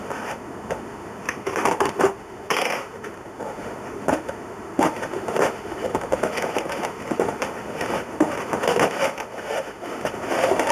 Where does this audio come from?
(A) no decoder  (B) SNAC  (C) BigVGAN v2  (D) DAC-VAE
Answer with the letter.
D